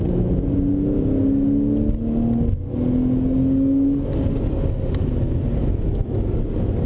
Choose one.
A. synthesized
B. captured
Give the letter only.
B